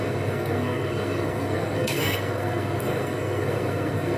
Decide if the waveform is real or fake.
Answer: fake